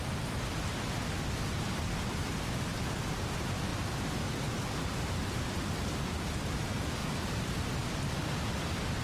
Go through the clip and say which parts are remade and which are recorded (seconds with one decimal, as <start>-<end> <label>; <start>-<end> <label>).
0.0-9.0 recorded